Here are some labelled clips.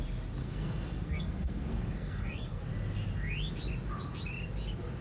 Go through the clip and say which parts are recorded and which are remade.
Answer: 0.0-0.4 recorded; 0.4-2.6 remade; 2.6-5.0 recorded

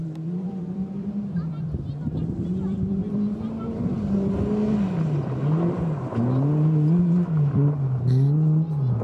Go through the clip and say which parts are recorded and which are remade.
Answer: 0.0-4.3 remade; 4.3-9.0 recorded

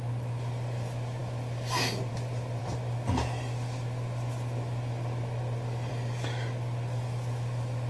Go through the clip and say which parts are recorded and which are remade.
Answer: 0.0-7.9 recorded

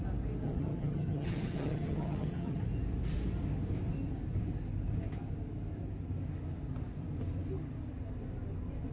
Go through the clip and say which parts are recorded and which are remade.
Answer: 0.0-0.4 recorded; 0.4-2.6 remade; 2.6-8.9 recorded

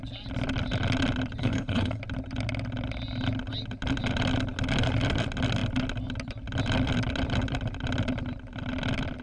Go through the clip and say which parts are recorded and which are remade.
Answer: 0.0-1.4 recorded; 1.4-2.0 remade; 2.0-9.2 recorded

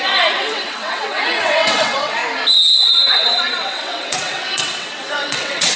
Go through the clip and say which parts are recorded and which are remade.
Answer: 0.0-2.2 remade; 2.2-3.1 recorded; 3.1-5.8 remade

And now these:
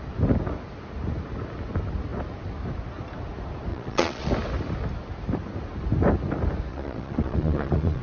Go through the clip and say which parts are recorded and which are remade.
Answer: 0.0-3.7 recorded; 3.7-4.3 remade; 4.3-6.7 recorded; 6.7-8.0 remade